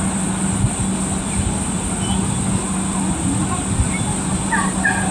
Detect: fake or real real